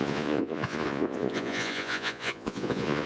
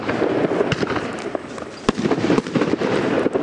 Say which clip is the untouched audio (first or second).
second